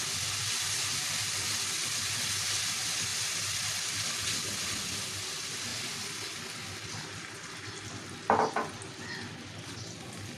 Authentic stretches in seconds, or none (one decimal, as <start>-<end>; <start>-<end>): 0.0-10.4